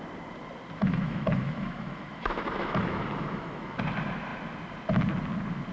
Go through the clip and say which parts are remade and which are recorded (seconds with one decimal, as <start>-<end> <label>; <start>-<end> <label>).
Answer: 0.0-0.8 recorded; 0.8-3.8 remade; 3.8-5.7 recorded